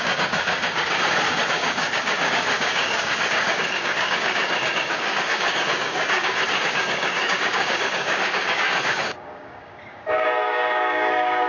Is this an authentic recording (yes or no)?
no